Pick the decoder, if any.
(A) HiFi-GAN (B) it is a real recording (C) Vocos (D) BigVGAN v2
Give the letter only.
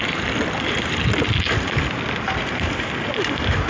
B